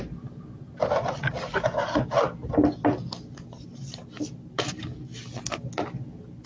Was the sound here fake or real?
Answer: real